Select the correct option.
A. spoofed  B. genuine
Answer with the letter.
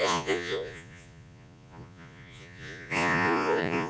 A